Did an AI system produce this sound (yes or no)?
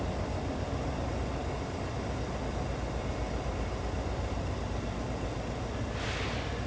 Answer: no